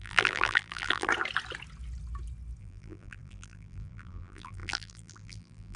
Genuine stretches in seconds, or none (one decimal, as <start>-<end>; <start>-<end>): 1.1-2.6

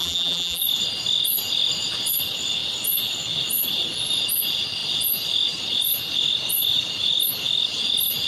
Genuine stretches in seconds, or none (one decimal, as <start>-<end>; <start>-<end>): 0.6-8.3

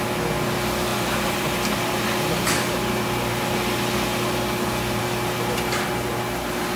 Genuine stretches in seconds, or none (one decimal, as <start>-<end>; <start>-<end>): 0.0-6.8

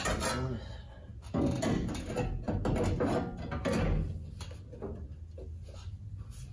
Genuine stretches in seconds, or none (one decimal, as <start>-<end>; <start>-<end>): 0.0-6.5

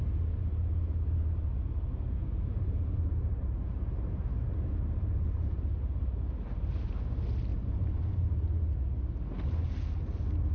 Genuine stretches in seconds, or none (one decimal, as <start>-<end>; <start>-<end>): 0.0-0.4; 1.1-2.2; 6.9-7.5; 8.8-10.5

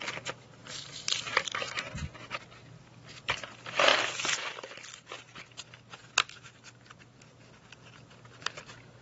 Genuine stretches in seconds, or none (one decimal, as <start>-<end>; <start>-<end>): 0.0-0.6; 1.9-9.0